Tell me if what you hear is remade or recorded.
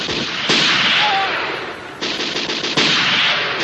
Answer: recorded